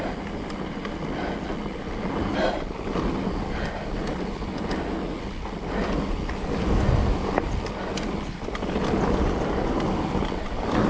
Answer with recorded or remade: recorded